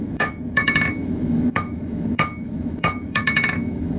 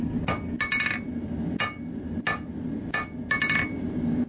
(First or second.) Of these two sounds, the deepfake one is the first